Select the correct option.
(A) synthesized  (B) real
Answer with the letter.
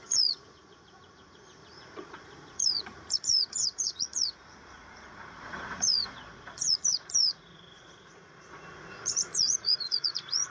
A